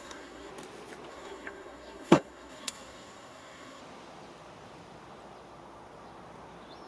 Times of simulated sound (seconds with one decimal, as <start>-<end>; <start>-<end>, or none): 0.0-0.5; 1.1-3.8